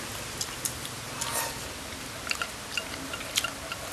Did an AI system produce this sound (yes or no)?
no